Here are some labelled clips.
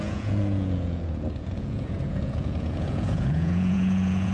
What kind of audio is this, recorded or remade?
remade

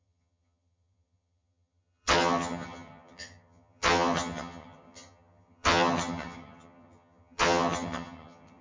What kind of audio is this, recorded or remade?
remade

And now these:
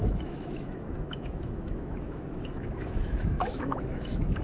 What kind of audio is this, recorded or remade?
remade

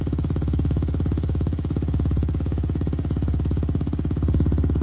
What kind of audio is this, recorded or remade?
remade